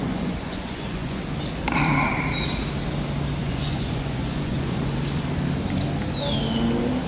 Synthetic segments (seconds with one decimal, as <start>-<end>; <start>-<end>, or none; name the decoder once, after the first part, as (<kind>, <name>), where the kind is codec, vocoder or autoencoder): 0.0-1.2 (vocoder, Vocos); 3.4-5.0